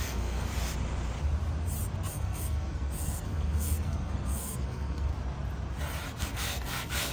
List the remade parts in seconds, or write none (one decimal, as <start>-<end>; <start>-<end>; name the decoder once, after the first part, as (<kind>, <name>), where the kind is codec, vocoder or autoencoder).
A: 0.0-0.5 (codec, SNAC); 2.1-5.1; 6.2-7.1